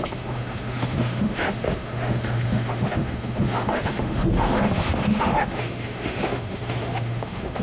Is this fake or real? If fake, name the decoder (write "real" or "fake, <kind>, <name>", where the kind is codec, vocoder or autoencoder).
fake, autoencoder, DAC-VAE